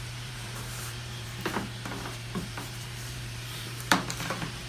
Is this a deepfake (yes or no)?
yes